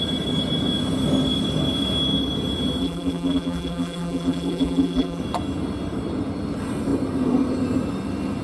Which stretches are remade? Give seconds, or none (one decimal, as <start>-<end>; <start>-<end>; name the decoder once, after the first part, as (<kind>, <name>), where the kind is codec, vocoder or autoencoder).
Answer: 2.8-5.2 (vocoder, BigVGAN v2)